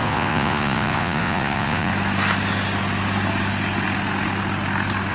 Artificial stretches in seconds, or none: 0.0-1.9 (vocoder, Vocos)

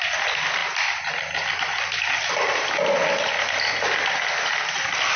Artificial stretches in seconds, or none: none

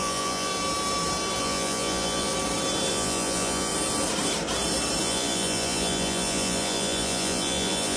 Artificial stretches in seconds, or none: 0.0-0.5 (vocoder, Vocos); 1.4-2.3; 2.9-3.7; 5.0-8.0

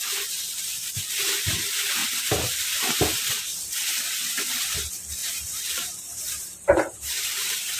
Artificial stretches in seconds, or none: 5.2-7.8 (vocoder, BigVGAN v2)